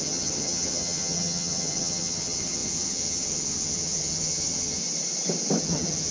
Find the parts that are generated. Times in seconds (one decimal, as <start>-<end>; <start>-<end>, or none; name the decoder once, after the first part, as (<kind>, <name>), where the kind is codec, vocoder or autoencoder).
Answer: 0.0-4.8 (vocoder, HiFi-GAN); 5.6-6.1